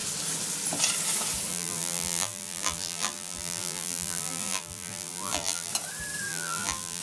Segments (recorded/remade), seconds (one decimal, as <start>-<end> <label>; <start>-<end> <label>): 0.0-1.5 recorded; 1.5-5.7 remade; 5.7-6.3 recorded; 6.3-7.0 remade